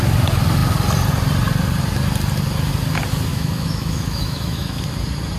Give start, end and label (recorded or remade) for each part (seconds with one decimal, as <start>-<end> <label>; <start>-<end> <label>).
0.0-3.3 recorded; 3.3-4.8 remade; 4.8-5.4 recorded